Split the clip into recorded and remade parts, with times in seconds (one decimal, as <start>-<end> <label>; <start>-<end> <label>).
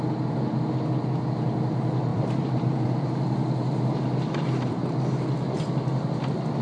0.0-2.1 recorded; 2.1-5.0 remade; 5.0-6.6 recorded